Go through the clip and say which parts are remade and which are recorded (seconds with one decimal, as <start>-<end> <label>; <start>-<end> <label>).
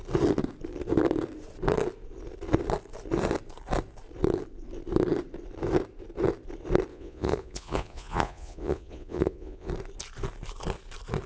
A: 0.0-6.9 recorded; 6.9-9.7 remade; 9.7-11.3 recorded